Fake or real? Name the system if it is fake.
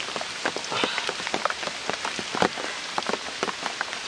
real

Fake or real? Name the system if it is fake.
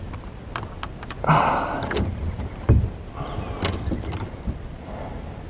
real